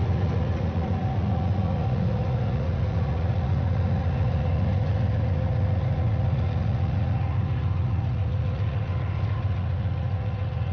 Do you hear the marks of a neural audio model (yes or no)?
yes